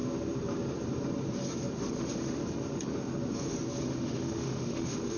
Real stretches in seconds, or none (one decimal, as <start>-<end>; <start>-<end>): 0.0-1.9; 2.4-3.8

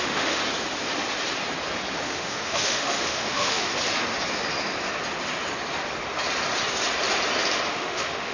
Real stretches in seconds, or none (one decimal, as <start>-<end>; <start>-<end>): 0.4-2.0; 3.7-7.7